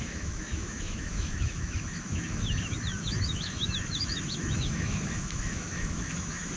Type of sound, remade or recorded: remade